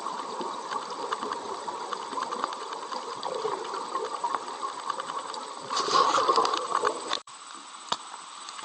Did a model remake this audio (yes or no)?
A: yes